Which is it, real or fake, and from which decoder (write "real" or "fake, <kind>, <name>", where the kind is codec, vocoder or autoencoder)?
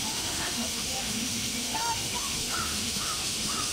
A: fake, autoencoder, DAC-VAE